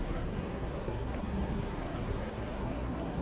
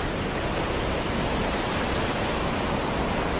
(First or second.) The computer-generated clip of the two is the first